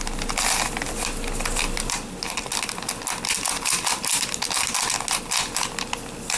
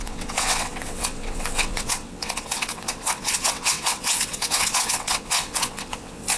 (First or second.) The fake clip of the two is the second